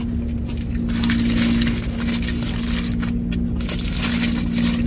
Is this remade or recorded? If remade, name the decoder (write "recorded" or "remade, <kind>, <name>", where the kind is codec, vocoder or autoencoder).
recorded